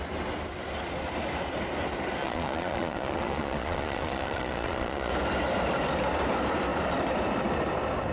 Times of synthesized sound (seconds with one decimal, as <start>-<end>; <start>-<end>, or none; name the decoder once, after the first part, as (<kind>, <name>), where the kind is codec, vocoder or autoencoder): 2.2-5.1 (vocoder, Vocos)